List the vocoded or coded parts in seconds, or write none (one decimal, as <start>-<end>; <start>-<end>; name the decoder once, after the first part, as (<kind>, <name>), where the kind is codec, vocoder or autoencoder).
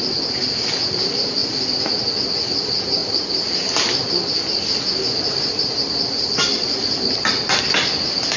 none